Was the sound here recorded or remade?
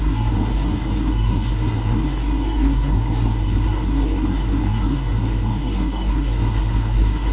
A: remade